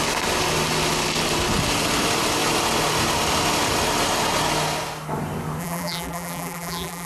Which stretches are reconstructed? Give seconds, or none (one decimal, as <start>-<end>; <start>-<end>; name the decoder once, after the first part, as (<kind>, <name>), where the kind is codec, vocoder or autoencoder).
5.6-7.1 (vocoder, BigVGAN v2)